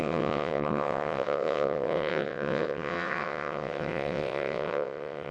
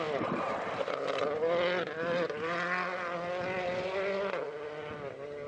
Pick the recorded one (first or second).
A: second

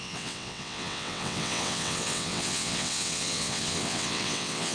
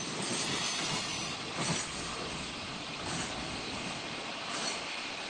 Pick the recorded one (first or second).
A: second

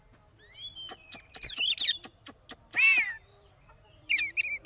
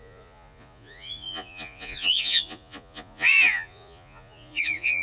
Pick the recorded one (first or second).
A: first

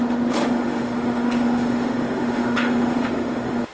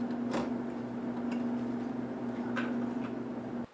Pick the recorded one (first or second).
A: second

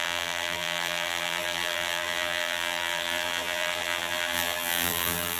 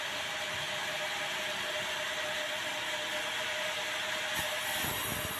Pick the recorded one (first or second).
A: second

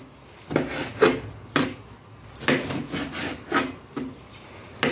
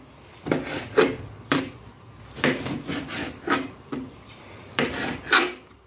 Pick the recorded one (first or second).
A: first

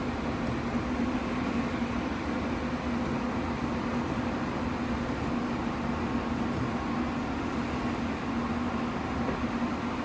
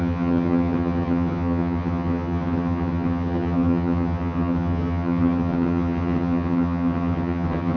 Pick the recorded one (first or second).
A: first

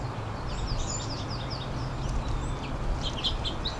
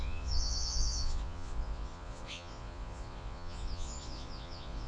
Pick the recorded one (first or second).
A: first